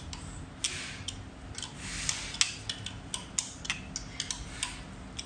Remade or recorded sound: recorded